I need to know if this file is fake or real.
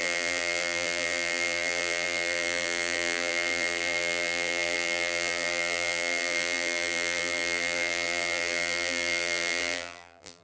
fake